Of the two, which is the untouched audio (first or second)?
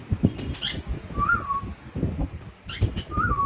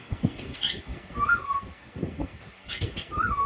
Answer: first